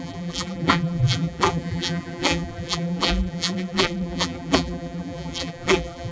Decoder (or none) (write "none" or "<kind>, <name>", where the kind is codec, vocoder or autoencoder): vocoder, BigVGAN v2